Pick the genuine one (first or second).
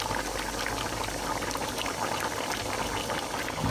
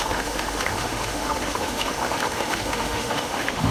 first